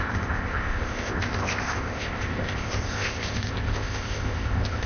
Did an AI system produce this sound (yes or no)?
yes